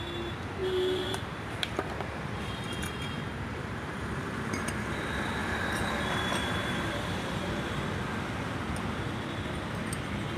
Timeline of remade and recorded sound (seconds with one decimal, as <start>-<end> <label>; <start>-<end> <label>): 0.0-0.6 recorded; 0.6-4.9 remade; 4.9-5.4 recorded; 5.4-7.8 remade; 7.8-10.4 recorded